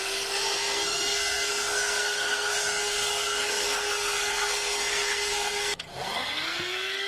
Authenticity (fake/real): fake